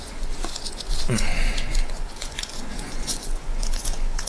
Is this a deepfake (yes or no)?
yes